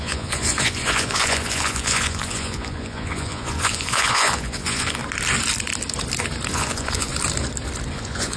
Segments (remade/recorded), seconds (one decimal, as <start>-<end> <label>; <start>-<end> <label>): 0.0-5.0 remade; 5.0-6.5 recorded; 6.5-7.1 remade; 7.1-7.9 recorded; 7.9-8.4 remade